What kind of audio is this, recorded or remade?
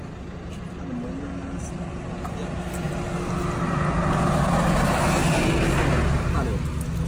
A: recorded